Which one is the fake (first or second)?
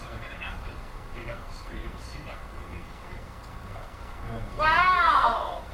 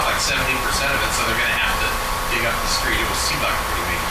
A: first